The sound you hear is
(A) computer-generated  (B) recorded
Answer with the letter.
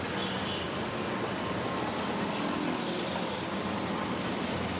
B